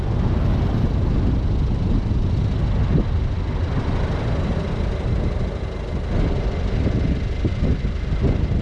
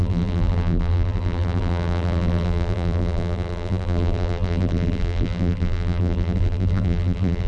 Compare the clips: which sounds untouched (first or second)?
first